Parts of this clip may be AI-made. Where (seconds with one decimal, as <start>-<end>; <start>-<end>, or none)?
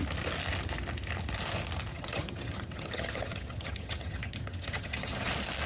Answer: 1.9-5.3